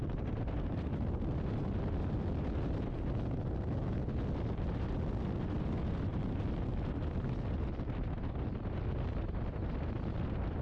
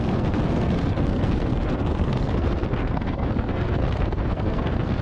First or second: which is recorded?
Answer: first